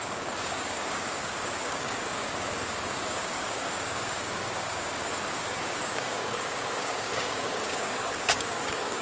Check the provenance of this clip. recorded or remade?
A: remade